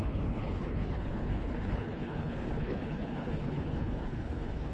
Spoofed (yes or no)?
yes